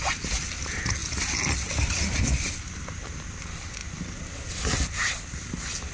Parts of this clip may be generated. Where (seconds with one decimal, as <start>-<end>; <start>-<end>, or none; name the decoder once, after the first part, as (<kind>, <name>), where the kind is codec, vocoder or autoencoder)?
none